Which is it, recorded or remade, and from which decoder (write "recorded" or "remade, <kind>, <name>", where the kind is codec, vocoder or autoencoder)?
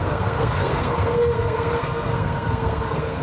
remade, codec, SNAC